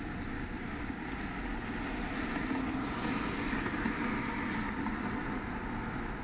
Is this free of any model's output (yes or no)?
yes